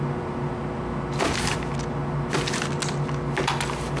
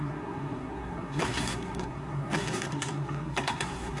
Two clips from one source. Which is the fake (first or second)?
second